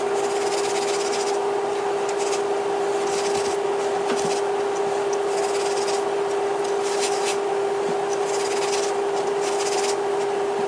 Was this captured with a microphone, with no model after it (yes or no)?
yes